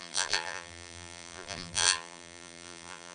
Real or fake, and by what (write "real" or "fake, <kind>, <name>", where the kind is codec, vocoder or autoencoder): fake, vocoder, BigVGAN v2